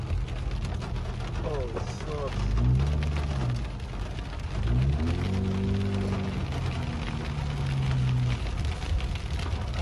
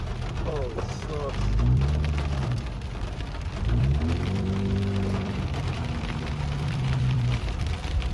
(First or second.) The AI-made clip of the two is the second